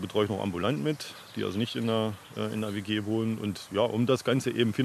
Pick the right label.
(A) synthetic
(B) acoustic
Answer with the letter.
B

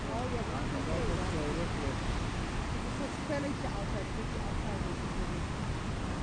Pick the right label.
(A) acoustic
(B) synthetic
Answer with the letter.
A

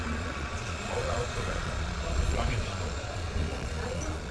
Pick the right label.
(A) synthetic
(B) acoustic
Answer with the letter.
A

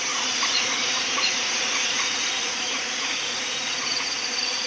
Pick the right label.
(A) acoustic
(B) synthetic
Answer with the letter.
B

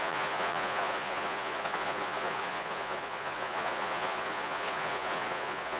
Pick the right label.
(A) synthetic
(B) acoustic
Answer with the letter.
A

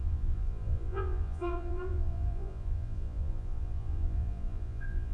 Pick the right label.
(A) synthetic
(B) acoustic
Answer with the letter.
A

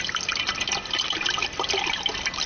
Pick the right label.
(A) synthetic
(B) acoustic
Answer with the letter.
B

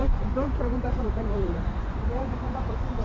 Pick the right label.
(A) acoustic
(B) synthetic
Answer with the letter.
B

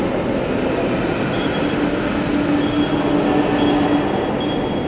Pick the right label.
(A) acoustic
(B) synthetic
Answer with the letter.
A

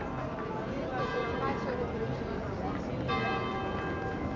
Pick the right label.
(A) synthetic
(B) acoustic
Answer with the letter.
B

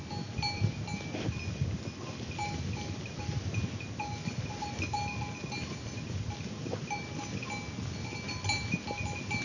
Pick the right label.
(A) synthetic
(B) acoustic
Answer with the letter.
B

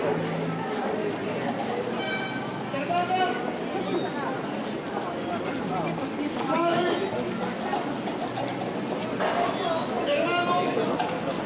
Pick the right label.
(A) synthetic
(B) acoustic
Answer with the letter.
B